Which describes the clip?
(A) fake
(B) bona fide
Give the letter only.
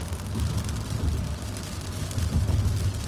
B